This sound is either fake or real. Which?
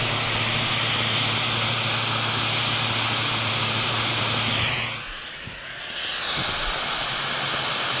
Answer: real